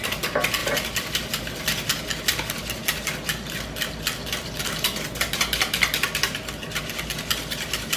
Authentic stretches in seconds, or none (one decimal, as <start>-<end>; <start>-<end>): 0.0-0.6; 1.4-8.0